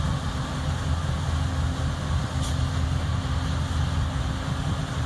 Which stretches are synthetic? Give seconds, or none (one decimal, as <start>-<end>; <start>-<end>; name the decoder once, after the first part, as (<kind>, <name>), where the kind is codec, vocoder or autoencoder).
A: none